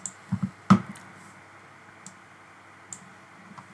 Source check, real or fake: real